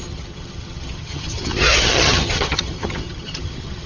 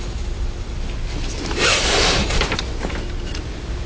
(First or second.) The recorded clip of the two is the second